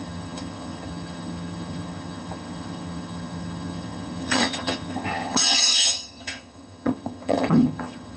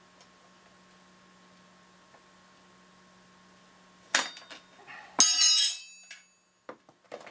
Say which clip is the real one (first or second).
second